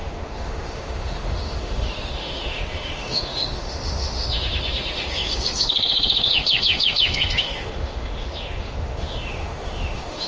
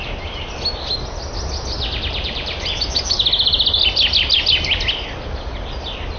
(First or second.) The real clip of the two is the second